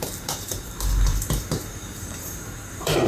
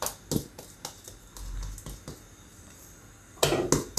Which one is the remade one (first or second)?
first